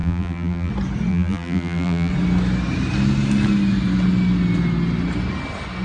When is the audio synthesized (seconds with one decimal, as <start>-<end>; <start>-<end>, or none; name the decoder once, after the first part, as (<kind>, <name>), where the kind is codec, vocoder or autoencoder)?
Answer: 0.0-0.7 (vocoder, BigVGAN v2); 1.1-2.1